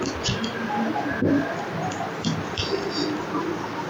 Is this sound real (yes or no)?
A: yes